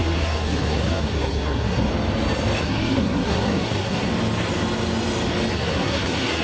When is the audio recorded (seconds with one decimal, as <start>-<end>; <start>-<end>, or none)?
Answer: 1.9-2.6; 4.1-5.5